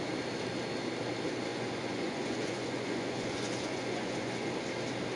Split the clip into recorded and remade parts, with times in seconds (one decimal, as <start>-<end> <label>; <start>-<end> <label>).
0.0-1.5 recorded; 1.5-4.5 remade; 4.5-5.2 recorded